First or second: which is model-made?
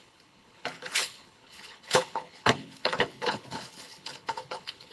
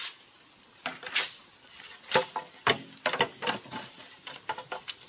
first